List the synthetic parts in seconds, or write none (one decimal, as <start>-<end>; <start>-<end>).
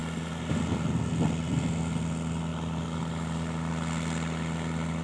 none